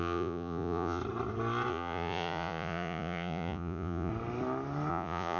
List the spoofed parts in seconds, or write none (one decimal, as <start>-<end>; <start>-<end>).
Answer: 0.0-1.0; 1.7-4.1; 4.9-5.4